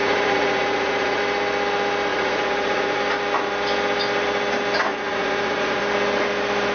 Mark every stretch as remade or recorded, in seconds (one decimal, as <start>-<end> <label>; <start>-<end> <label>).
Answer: 0.0-1.2 remade; 1.2-2.1 recorded; 2.1-3.0 remade; 3.0-4.9 recorded; 4.9-5.8 remade; 5.8-6.7 recorded